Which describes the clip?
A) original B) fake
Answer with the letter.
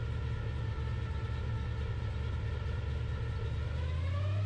A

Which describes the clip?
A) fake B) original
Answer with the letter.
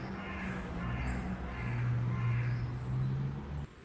B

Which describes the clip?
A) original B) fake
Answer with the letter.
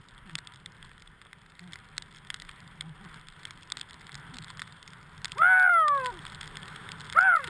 A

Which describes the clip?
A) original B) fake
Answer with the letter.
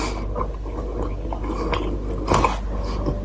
A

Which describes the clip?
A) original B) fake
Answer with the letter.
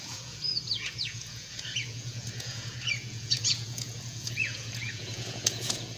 B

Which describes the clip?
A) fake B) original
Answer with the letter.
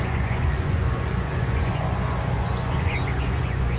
A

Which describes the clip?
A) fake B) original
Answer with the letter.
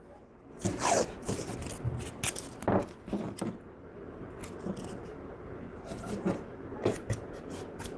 B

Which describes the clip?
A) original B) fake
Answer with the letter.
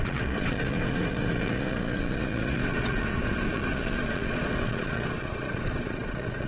B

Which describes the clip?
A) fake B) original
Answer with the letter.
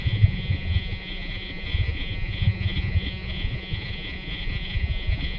A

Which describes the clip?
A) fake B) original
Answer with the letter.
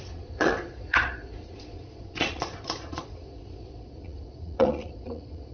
A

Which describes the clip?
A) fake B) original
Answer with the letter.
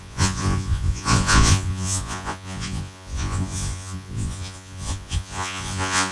A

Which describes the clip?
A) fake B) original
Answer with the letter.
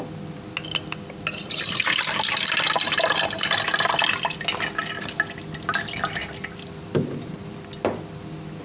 B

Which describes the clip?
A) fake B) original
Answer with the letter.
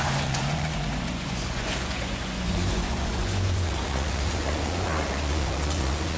A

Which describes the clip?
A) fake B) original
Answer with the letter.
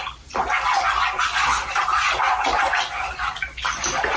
B